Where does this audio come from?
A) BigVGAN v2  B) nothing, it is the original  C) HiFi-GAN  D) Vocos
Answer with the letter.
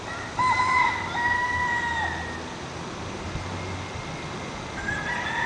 B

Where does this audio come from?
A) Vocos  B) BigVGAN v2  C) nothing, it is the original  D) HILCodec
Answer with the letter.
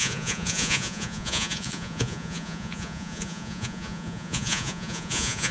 A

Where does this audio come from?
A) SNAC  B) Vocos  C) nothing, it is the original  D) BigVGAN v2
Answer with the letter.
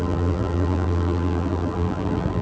D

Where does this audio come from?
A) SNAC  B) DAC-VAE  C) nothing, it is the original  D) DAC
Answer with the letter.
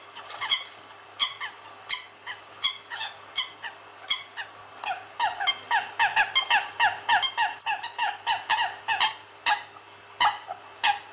C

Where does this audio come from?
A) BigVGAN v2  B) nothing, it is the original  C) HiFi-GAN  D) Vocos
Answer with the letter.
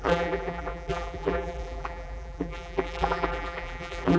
A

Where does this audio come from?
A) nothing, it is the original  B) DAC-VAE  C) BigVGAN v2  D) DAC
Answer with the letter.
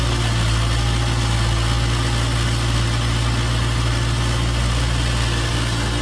A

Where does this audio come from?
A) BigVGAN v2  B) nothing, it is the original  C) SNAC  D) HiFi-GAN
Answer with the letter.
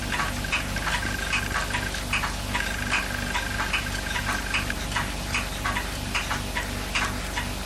B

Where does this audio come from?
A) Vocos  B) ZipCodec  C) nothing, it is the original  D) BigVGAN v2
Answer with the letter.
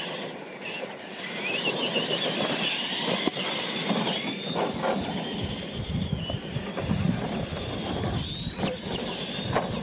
C